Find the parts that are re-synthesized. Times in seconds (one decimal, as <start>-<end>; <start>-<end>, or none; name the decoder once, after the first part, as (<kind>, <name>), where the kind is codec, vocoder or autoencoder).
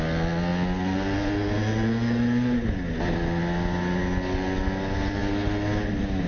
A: none